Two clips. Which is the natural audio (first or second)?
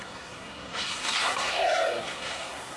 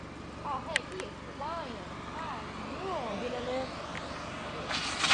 second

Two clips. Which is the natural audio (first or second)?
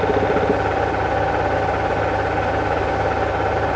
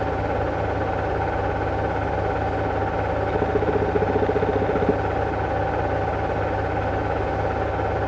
second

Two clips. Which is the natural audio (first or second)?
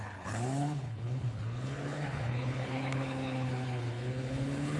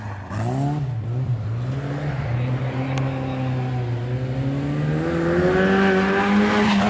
second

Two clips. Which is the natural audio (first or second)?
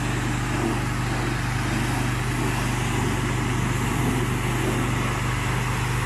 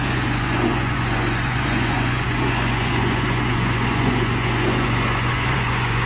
first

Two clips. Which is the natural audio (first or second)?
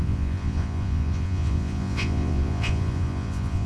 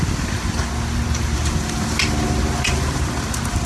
second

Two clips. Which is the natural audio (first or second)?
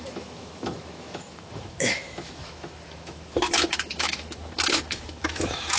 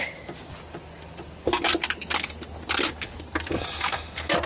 second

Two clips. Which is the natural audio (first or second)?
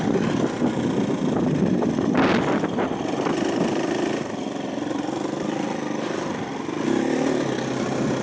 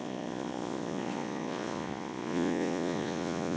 first